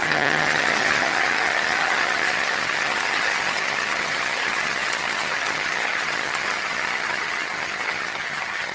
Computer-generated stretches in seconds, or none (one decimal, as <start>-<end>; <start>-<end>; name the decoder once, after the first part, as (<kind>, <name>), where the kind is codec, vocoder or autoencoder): 0.0-8.7 (vocoder, HiFi-GAN)